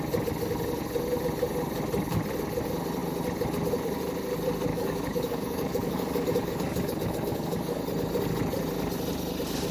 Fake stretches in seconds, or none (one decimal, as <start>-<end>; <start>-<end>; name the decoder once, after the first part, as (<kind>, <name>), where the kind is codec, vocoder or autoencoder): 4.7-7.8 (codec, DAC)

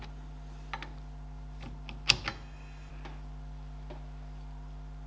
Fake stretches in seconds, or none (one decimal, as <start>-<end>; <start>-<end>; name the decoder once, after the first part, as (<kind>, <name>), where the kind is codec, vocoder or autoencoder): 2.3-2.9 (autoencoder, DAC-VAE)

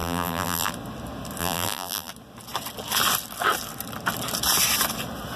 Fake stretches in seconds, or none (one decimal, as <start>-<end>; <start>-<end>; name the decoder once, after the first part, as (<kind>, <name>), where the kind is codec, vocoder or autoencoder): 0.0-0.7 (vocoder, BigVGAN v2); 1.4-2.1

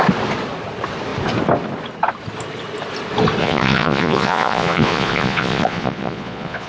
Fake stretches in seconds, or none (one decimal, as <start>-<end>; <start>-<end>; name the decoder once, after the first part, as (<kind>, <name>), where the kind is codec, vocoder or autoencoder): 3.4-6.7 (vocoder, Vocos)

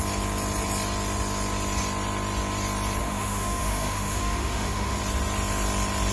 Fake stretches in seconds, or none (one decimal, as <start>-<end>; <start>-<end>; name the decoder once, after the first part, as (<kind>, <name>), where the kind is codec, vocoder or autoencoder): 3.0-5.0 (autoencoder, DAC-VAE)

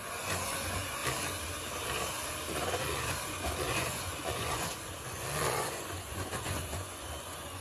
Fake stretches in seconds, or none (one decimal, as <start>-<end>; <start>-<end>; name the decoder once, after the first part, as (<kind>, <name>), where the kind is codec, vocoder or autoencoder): 0.0-1.0 (vocoder, Vocos); 2.5-7.6

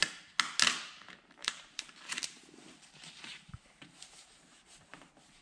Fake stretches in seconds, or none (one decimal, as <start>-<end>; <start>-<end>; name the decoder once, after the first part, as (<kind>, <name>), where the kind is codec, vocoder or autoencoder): 0.7-5.4 (vocoder, BigVGAN v2)